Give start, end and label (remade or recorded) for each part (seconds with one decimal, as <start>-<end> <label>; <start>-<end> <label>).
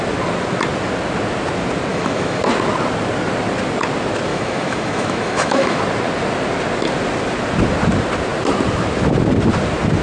0.0-1.9 recorded; 1.9-2.4 remade; 2.4-4.3 recorded; 4.3-5.8 remade; 5.8-10.0 recorded